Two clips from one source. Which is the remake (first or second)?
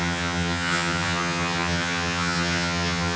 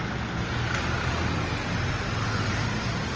first